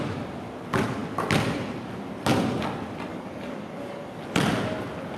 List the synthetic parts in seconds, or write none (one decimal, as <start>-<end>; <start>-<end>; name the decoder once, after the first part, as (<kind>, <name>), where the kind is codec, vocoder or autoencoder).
3.1-4.2 (codec, DAC)